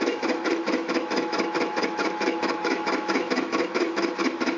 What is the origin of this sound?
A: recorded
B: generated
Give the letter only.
B